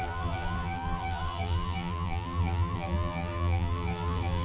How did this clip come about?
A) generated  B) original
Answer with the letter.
A